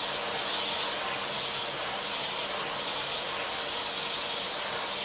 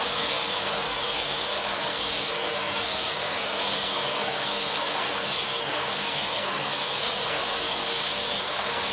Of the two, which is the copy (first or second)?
second